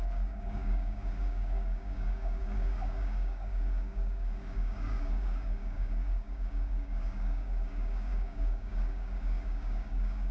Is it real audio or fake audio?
fake